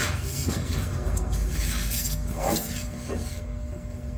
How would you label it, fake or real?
fake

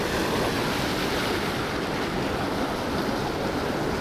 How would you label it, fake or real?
real